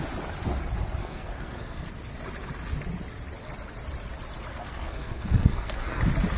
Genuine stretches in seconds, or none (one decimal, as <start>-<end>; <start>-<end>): 0.0-1.0; 1.9-4.5; 6.0-6.4